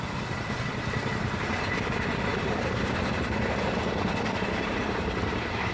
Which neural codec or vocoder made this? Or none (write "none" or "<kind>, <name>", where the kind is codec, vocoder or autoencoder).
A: none